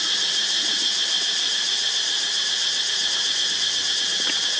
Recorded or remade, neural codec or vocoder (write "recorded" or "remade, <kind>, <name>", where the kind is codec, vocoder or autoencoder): recorded